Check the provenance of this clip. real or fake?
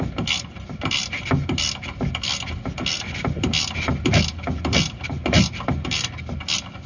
real